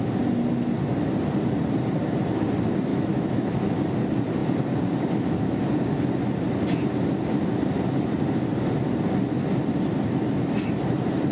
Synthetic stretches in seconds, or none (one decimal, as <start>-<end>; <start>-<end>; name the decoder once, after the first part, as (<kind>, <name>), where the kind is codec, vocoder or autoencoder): 2.9-3.5 (autoencoder, DAC-VAE)